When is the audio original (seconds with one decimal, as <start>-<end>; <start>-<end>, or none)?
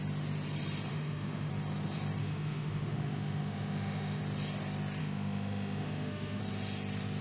0.0-0.9; 1.5-2.2; 4.2-5.0; 6.4-7.2